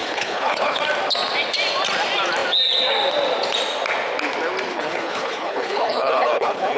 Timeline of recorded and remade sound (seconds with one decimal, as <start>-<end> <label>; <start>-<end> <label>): 0.0-0.8 remade; 0.8-4.7 recorded; 4.7-6.8 remade